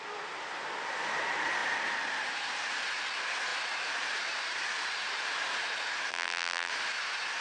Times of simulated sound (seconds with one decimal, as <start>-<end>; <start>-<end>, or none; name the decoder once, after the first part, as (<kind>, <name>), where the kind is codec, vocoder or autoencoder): 6.1-6.7 (vocoder, BigVGAN v2)